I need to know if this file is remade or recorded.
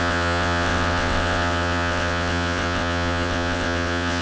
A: remade